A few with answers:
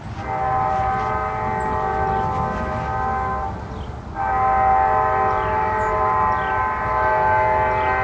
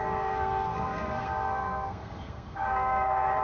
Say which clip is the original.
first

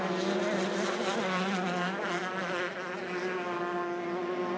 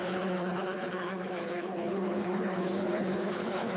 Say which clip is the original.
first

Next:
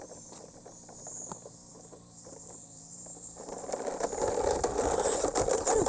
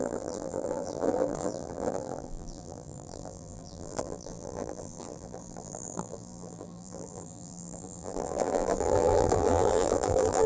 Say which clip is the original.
first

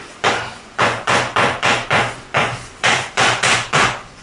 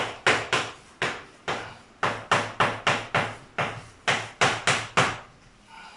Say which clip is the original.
second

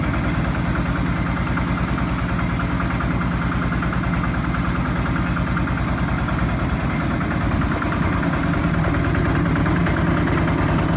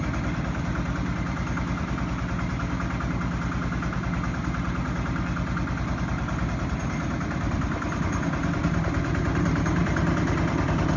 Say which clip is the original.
first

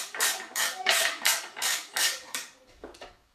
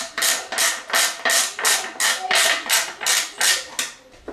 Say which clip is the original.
second